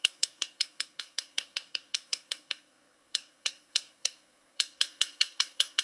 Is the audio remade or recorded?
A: remade